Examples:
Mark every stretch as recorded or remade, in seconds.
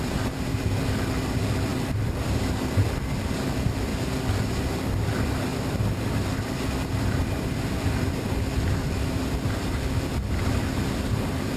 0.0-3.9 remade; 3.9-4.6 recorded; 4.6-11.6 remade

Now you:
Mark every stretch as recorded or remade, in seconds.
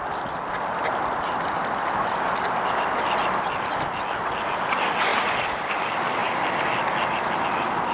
0.0-5.1 recorded; 5.1-5.7 remade; 5.7-6.2 recorded; 6.2-6.8 remade; 6.8-7.9 recorded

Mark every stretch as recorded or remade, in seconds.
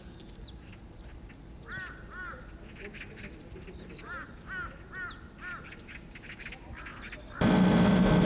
0.0-8.3 recorded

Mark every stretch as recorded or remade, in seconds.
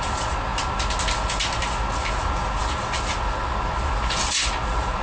0.0-5.0 recorded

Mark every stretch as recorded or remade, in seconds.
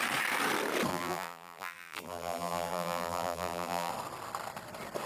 0.0-0.9 recorded; 0.9-3.9 remade; 3.9-5.1 recorded